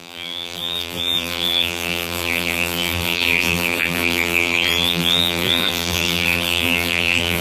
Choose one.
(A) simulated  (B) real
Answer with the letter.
A